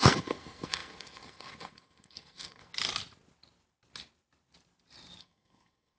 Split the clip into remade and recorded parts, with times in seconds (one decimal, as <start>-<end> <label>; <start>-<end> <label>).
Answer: 0.0-2.7 remade; 2.7-5.2 recorded; 5.2-6.0 remade